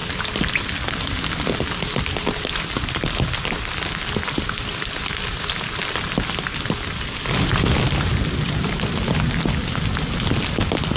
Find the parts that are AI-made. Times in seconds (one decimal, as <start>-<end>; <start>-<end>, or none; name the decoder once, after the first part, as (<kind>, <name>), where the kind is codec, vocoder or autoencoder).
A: none